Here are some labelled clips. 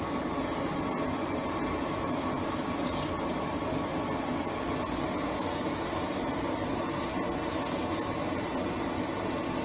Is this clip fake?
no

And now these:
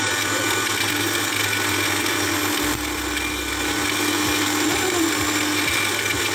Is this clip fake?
no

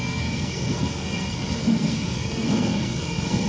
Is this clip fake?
yes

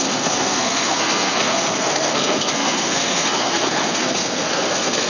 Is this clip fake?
yes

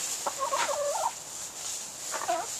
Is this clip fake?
no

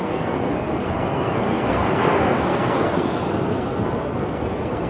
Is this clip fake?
yes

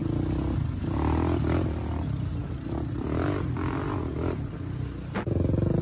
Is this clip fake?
no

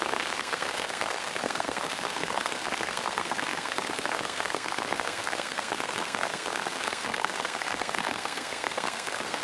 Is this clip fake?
yes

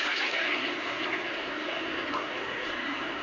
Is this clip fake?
yes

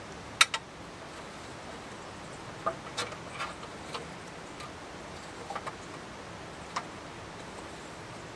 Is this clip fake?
no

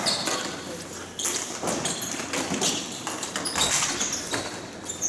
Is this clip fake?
no